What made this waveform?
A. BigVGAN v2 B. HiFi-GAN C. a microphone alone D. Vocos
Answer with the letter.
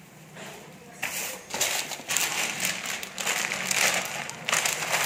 C